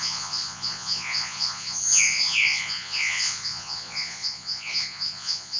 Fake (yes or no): yes